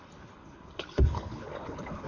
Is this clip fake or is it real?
fake